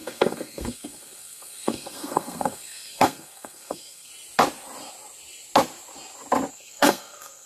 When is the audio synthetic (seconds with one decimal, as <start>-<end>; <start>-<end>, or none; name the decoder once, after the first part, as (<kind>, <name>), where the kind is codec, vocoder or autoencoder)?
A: 0.0-4.1 (codec, SNAC); 6.5-7.5